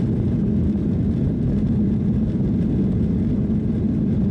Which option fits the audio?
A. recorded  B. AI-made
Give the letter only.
A